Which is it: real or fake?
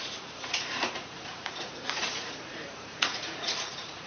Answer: fake